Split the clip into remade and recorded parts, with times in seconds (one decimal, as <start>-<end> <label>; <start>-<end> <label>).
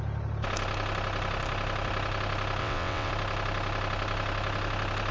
0.0-2.6 recorded; 2.6-3.1 remade; 3.1-5.1 recorded